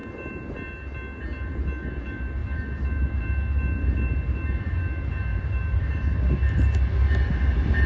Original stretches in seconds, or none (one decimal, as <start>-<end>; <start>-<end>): 0.0-5.3; 6.4-7.9